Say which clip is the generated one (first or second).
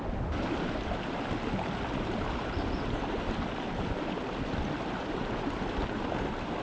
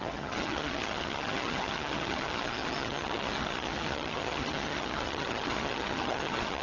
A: second